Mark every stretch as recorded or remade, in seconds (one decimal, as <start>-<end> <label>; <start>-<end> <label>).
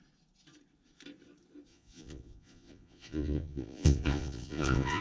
0.0-1.7 recorded; 1.7-5.0 remade